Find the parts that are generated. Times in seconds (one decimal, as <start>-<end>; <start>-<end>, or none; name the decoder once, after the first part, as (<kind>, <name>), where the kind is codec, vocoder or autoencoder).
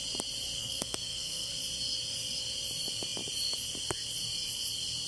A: 0.6-1.5 (codec, SNAC)